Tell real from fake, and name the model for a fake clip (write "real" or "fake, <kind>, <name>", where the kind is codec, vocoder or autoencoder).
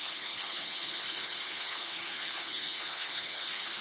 fake, codec, HILCodec